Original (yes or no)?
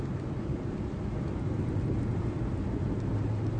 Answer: yes